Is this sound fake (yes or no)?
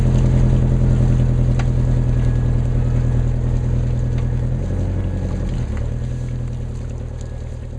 no